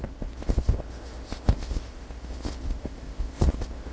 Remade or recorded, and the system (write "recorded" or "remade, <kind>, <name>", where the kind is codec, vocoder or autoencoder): remade, codec, ZipCodec